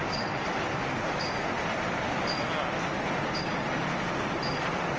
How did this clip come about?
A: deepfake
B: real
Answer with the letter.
B